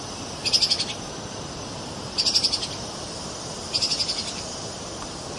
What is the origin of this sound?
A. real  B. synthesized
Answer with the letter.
A